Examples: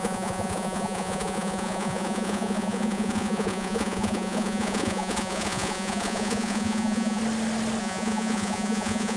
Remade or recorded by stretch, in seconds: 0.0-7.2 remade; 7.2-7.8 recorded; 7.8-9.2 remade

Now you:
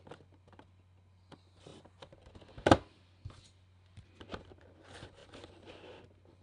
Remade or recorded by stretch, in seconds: 0.0-6.4 recorded

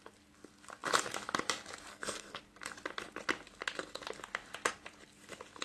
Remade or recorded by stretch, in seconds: 0.0-1.9 recorded; 1.9-2.4 remade; 2.4-5.6 recorded

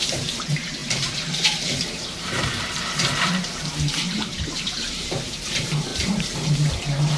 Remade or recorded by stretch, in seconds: 0.0-5.9 remade; 5.9-7.2 recorded

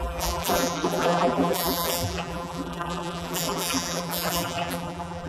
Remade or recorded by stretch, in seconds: 0.0-5.3 remade

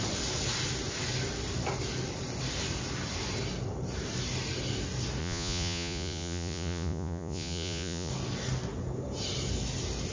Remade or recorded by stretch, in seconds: 0.0-5.2 recorded; 5.2-8.1 remade; 8.1-10.1 recorded